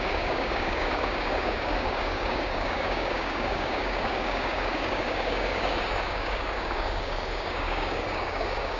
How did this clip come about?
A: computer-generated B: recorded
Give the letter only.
A